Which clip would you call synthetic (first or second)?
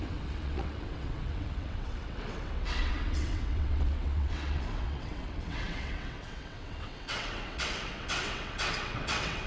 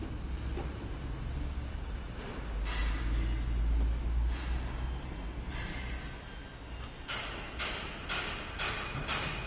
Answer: first